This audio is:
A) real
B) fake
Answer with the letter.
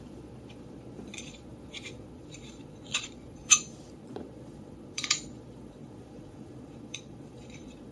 B